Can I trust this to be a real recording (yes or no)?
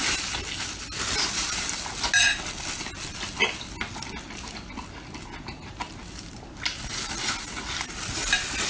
yes